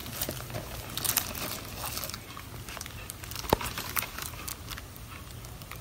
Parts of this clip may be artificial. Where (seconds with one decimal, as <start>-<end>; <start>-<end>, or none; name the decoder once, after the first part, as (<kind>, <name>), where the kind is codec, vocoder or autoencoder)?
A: 3.5-4.5 (vocoder, BigVGAN v2)